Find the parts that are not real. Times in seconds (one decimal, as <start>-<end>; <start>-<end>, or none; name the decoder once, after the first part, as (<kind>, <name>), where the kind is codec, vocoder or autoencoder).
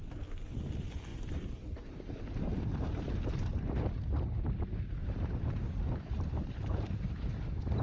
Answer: 1.1-3.3 (vocoder, BigVGAN v2); 5.0-7.3